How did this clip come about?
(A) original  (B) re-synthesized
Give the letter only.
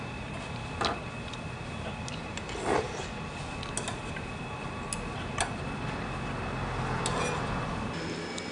A